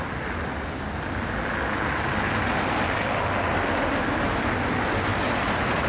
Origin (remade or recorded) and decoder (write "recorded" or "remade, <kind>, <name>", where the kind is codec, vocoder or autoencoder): recorded